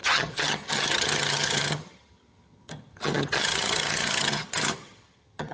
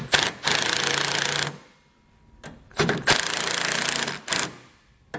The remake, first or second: first